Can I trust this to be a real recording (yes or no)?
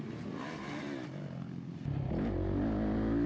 yes